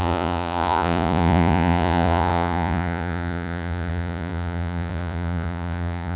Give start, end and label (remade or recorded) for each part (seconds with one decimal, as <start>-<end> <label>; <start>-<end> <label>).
0.0-6.2 remade